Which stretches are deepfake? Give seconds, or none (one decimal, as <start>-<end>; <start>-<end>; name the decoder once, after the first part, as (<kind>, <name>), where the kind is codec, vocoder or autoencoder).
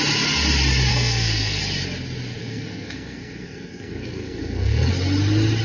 0.9-1.6 (codec, SNAC); 2.4-4.9